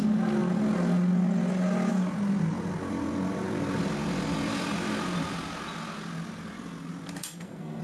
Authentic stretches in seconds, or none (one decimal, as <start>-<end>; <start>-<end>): 0.0-7.2